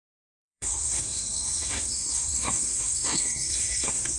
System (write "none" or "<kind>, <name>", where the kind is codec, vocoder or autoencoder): codec, SNAC